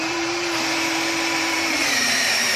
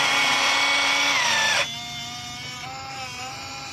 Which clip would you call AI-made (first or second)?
first